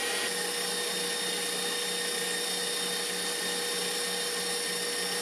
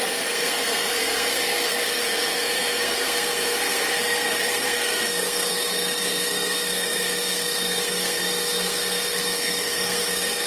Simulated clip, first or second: second